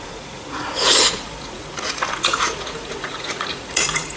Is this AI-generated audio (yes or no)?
yes